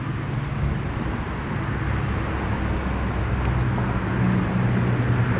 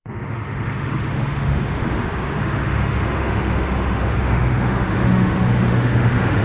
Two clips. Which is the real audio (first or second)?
first